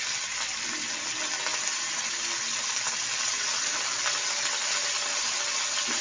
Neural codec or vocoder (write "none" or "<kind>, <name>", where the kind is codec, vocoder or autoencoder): none